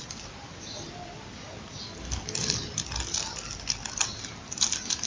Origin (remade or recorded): recorded